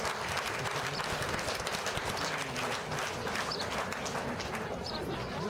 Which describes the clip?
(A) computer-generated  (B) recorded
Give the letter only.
B